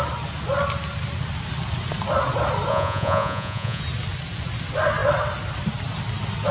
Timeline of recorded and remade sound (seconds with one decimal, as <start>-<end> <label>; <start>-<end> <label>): 0.0-2.7 recorded; 2.7-3.8 remade; 3.8-6.5 recorded